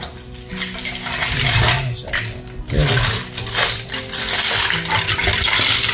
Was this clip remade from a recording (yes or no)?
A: no